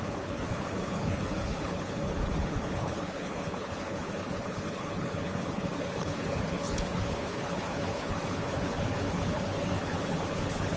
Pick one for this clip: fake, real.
fake